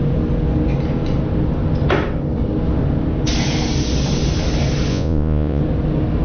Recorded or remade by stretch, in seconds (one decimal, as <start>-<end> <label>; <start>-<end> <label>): 0.0-4.9 recorded; 4.9-5.6 remade; 5.6-6.2 recorded